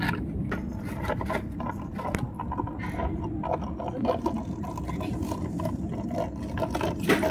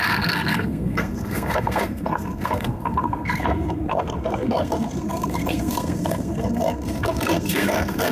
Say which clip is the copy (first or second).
second